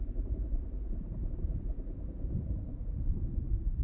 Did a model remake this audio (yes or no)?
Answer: yes